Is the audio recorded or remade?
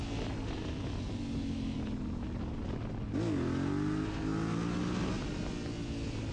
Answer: recorded